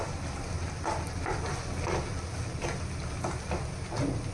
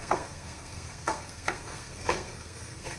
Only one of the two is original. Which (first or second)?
first